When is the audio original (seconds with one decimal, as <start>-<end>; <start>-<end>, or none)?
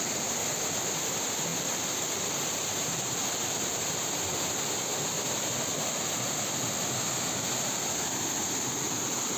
0.4-1.0; 4.3-8.7